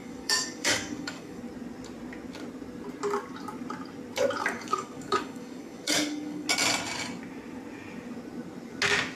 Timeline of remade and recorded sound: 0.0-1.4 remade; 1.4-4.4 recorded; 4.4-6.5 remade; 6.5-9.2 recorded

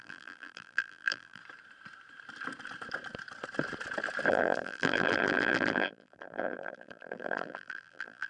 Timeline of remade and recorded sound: 0.0-1.4 remade; 1.4-4.3 recorded; 4.3-8.3 remade

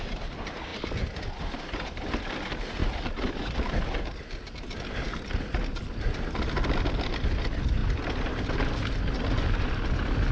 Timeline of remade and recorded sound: 0.0-10.3 recorded

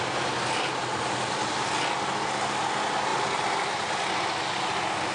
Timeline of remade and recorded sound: 0.0-5.1 recorded

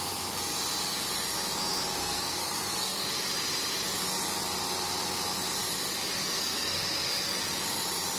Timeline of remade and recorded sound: 0.0-2.0 recorded; 2.0-3.1 remade; 3.1-6.2 recorded; 6.2-6.8 remade; 6.8-8.2 recorded